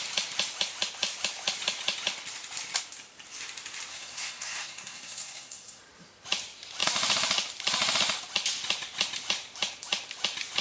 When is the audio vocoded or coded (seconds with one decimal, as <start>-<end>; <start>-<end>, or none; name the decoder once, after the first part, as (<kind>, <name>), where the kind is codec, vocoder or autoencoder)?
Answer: 3.9-5.8 (codec, SNAC)